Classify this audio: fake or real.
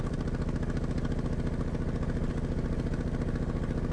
real